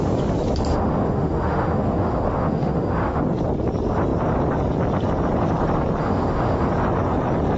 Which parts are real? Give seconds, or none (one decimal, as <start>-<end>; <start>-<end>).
0.0-0.7; 3.2-6.0; 6.7-7.6